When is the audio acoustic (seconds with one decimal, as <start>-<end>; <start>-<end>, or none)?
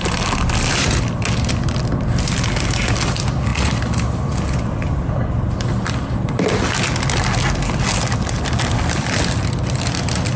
0.0-10.4